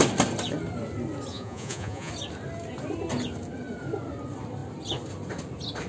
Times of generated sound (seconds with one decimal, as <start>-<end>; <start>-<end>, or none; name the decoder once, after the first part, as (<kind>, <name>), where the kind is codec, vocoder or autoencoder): 1.3-2.1 (vocoder, Vocos)

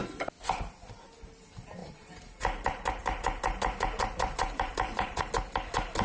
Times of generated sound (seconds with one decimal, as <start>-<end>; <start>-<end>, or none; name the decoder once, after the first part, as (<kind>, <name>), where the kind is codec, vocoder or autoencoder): 1.8-5.2 (vocoder, BigVGAN v2)

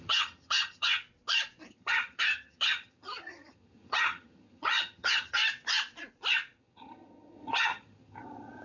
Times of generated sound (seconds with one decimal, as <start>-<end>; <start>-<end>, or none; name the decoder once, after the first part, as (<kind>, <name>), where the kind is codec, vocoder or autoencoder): 0.0-1.0 (vocoder, HiFi-GAN); 1.7-5.4; 6.6-8.6

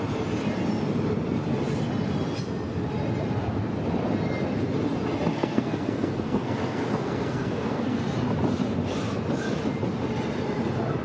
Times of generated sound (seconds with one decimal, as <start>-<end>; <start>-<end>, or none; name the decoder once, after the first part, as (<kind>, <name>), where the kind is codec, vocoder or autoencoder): 5.3-8.0 (codec, SNAC)

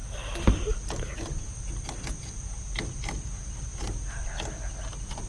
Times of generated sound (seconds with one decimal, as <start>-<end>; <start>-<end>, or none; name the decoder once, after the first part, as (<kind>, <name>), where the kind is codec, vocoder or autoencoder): none